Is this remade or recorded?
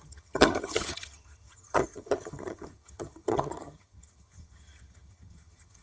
remade